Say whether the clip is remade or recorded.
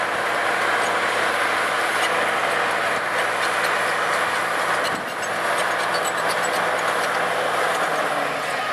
recorded